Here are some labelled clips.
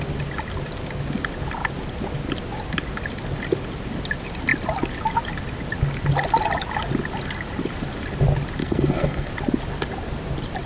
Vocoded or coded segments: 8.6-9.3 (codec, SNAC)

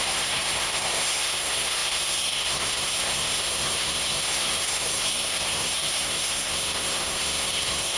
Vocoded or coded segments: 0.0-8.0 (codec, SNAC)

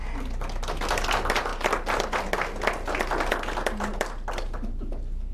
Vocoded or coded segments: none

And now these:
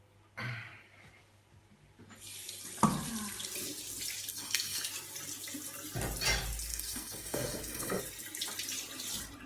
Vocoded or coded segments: 4.3-4.9 (codec, SNAC); 6.7-8.0

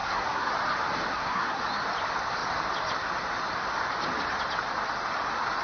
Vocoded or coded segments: 0.0-0.5 (codec, SNAC); 1.1-1.6